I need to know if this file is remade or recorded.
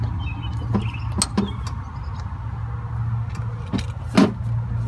recorded